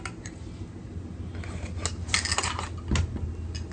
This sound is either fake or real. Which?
real